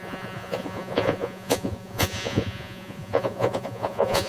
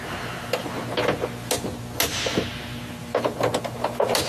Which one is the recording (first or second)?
second